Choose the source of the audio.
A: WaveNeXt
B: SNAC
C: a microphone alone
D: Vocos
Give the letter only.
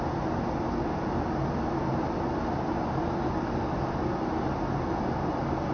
C